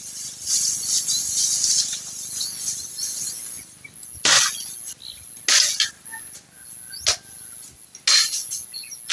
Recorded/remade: recorded